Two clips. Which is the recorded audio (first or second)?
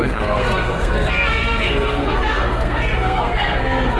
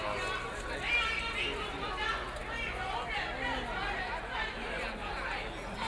second